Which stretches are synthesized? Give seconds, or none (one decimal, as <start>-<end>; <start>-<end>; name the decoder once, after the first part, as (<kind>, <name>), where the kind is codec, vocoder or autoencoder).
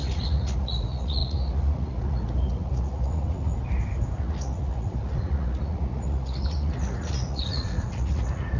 0.0-3.5 (vocoder, Vocos); 4.2-8.6